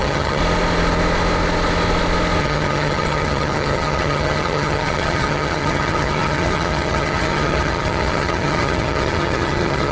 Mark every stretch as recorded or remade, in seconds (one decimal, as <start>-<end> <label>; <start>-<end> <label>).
0.0-0.4 remade; 0.4-2.4 recorded; 2.4-9.9 remade